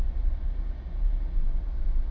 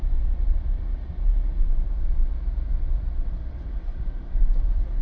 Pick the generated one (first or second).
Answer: second